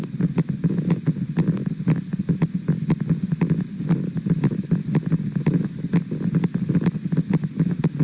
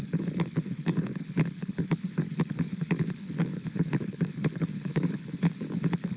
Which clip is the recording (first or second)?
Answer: first